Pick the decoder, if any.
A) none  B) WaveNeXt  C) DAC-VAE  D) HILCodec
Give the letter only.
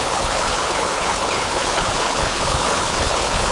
D